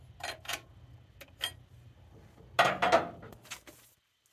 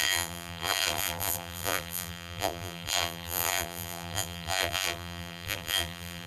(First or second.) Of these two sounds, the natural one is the first